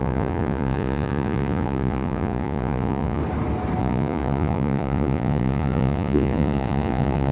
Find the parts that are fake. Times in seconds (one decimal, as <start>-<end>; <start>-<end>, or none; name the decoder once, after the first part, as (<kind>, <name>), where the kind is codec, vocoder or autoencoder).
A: 0.0-3.2 (vocoder, Vocos); 3.8-7.3